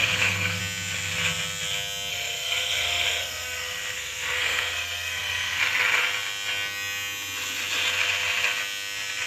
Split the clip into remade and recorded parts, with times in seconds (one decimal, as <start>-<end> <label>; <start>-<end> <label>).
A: 0.0-0.6 remade; 0.6-2.1 recorded; 2.1-5.6 remade; 5.6-9.3 recorded